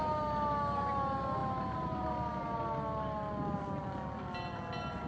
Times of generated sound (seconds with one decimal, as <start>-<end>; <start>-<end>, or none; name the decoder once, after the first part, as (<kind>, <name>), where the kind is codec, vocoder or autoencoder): none